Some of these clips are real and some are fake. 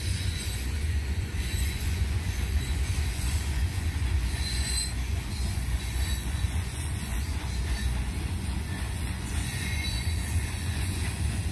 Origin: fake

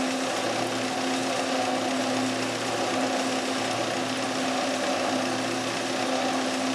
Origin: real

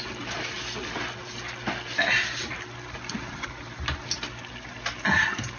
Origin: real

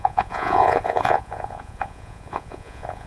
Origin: fake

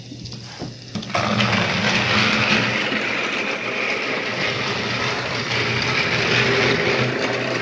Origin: real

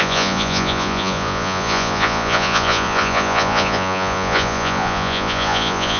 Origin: fake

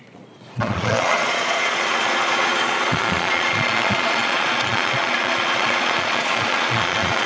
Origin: fake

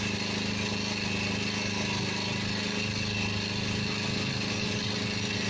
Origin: real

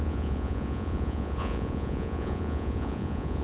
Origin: fake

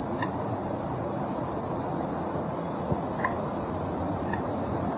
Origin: fake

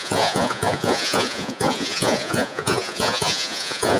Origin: fake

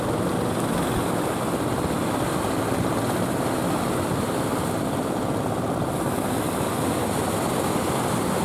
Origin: real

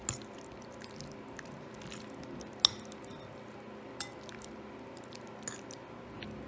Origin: real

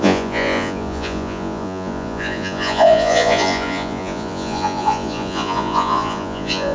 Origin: fake